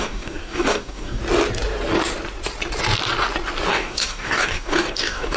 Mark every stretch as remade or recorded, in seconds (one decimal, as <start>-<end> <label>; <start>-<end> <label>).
0.0-1.2 remade; 1.2-3.7 recorded; 3.7-5.4 remade